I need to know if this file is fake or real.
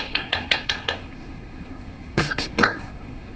fake